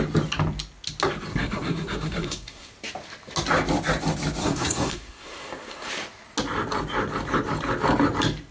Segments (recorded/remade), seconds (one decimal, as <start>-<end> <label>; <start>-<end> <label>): 0.0-1.3 recorded; 1.3-2.7 remade; 2.7-4.4 recorded; 4.4-5.9 remade; 5.9-8.5 recorded